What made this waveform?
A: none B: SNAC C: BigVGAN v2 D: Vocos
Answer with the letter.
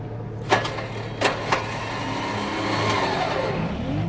A